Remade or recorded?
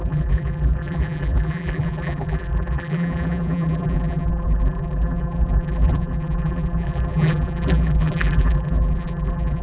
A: remade